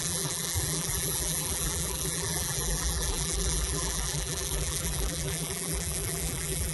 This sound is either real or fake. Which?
fake